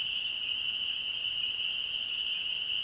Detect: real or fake fake